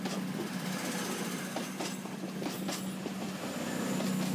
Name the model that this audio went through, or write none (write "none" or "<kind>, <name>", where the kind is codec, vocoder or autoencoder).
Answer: none